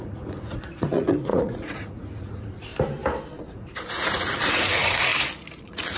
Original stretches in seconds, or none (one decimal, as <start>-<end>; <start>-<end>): 2.7-3.5; 5.1-5.6

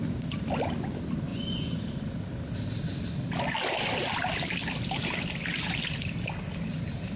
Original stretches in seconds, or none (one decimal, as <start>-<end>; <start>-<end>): 0.0-1.3; 1.8-7.2

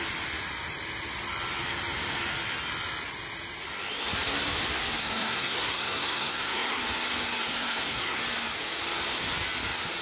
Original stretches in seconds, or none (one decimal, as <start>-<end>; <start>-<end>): 0.0-5.0; 6.8-7.4; 8.2-10.0

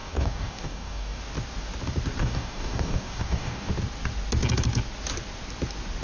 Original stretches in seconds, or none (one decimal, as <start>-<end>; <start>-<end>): 1.2-2.2; 3.7-6.0

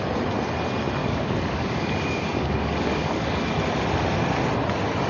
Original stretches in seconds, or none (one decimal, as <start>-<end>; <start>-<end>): 0.0-1.0; 3.4-5.1

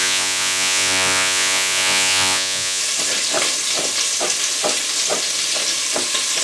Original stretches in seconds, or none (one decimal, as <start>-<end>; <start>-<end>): 2.8-6.4

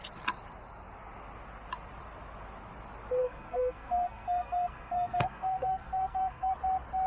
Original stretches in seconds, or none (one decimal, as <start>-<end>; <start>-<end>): 0.0-3.2; 6.5-7.1